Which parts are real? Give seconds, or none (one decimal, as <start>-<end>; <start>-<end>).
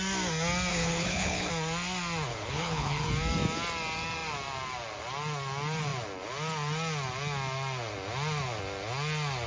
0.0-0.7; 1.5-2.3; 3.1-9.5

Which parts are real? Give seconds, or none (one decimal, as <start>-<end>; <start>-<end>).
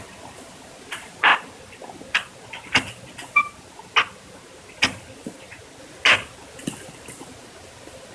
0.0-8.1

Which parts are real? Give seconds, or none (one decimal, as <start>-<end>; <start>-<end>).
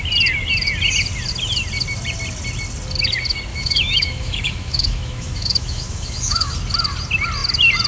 0.0-3.5; 6.5-7.9